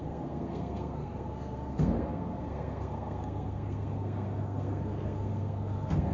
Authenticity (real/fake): fake